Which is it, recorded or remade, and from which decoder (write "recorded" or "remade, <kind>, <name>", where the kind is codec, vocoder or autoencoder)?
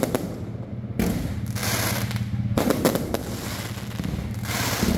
recorded